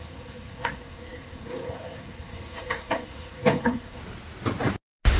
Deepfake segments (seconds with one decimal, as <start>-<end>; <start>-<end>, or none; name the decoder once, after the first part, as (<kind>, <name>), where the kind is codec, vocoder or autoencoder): 0.0-4.0 (codec, SNAC)